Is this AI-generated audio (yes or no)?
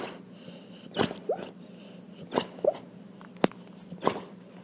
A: no